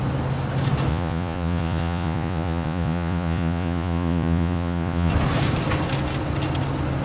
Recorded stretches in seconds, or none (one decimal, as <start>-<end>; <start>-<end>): 0.0-0.9; 5.1-7.0